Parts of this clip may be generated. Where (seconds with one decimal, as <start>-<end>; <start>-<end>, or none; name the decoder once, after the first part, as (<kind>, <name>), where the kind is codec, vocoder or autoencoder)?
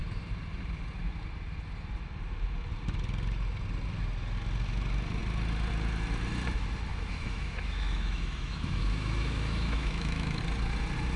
6.9-10.4 (autoencoder, DAC-VAE)